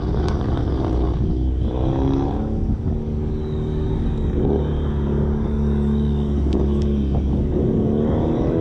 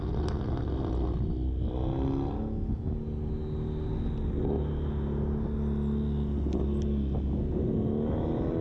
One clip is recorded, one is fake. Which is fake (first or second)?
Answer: first